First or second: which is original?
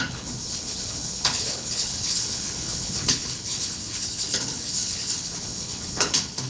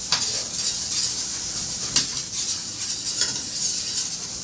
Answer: second